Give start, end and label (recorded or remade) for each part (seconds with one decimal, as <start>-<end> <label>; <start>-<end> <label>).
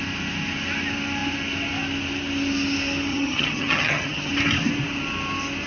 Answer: 0.0-3.1 recorded; 3.1-4.3 remade; 4.3-5.7 recorded